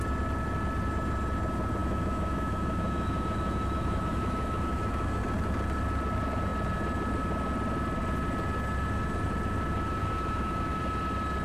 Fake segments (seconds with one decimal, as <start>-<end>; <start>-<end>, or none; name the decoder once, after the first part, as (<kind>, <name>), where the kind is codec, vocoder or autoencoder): 1.8-5.2 (autoencoder, DAC-VAE); 10.0-10.8